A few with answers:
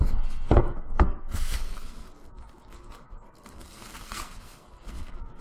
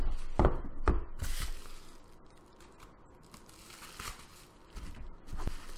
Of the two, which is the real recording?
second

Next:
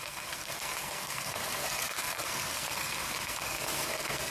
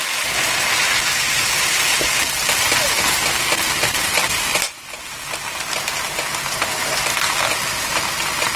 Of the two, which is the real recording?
second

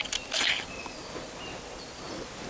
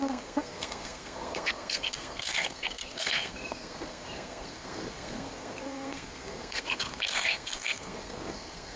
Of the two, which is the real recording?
first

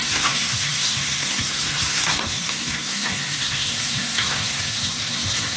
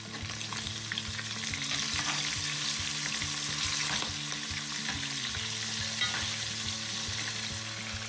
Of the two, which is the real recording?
second